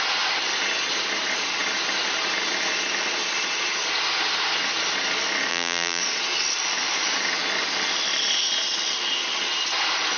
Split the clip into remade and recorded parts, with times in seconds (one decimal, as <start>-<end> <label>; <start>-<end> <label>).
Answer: 0.0-5.5 recorded; 5.5-6.0 remade; 6.0-10.2 recorded